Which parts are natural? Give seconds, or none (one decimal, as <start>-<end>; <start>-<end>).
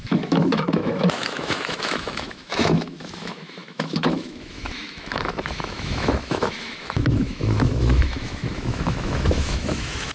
none